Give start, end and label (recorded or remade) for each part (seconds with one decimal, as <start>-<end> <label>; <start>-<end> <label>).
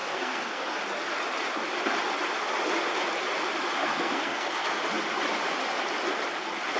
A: 0.0-0.8 remade; 0.8-3.8 recorded; 3.8-4.8 remade; 4.8-6.8 recorded